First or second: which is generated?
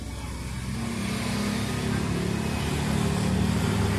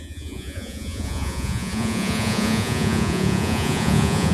second